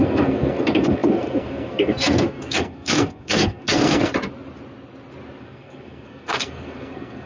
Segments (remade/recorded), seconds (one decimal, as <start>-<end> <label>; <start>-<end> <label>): 0.0-4.1 remade; 4.1-5.4 recorded; 5.4-7.3 remade

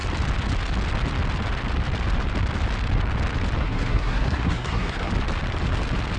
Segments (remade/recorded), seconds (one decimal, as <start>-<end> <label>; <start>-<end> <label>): 0.0-3.6 recorded; 3.6-5.1 remade; 5.1-6.2 recorded

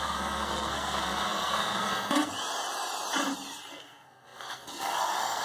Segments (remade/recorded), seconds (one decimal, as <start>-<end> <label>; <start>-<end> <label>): 0.0-2.3 remade; 2.3-3.7 recorded; 3.7-5.4 remade

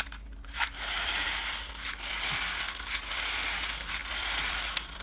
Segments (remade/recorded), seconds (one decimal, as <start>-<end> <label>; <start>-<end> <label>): 0.0-5.0 recorded

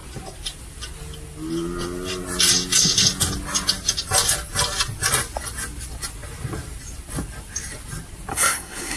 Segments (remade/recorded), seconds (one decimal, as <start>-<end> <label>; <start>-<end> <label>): 0.0-8.3 recorded; 8.3-9.0 remade

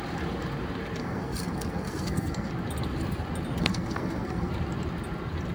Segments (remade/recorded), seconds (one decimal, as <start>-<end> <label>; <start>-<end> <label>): 0.0-1.0 recorded; 1.0-2.5 remade; 2.5-3.6 recorded; 3.6-4.5 remade; 4.5-5.5 recorded

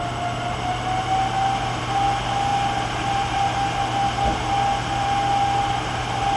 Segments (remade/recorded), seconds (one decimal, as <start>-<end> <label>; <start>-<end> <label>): 0.0-6.4 recorded

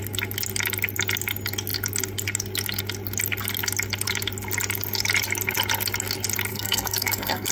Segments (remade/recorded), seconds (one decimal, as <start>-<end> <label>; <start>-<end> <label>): 0.0-6.5 recorded; 6.5-7.5 remade